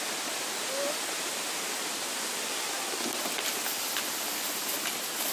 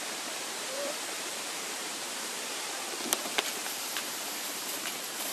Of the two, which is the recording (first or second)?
first